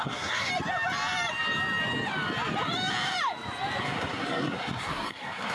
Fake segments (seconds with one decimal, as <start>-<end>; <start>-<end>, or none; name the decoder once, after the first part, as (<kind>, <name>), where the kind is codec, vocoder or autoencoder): 0.0-0.5 (codec, SNAC); 3.8-5.5